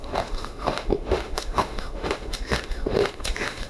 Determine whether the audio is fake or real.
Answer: fake